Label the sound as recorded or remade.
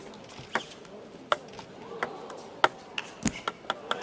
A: recorded